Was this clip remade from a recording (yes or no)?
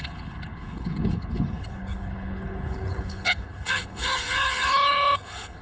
yes